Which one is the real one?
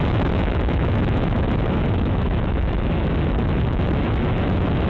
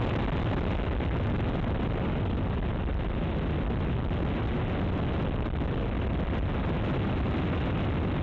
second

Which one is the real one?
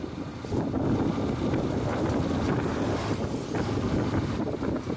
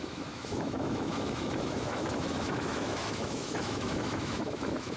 first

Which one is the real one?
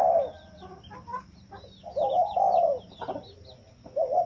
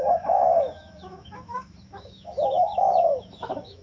first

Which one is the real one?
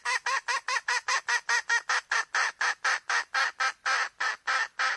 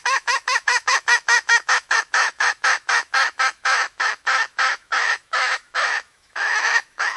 first